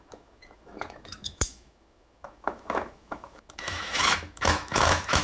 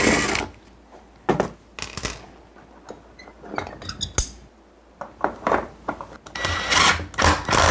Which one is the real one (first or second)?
second